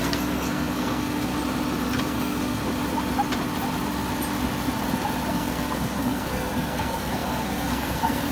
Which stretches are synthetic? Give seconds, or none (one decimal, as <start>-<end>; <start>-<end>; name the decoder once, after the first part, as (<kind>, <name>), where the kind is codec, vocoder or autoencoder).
0.0-1.3 (codec, SNAC); 2.0-2.6; 5.3-8.3